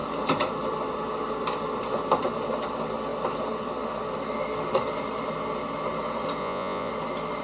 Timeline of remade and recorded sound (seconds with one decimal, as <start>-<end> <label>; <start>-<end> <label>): 0.0-6.4 recorded; 6.4-6.9 remade; 6.9-7.4 recorded